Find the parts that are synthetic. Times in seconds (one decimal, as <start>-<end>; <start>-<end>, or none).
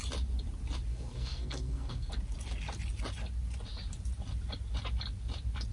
0.9-2.1